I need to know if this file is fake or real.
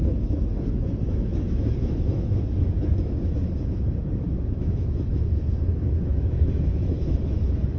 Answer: fake